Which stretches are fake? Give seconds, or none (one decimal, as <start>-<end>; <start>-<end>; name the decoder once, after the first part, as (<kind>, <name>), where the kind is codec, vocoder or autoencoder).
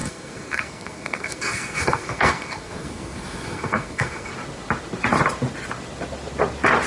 0.0-4.3 (codec, SNAC)